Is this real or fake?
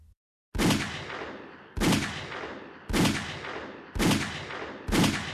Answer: real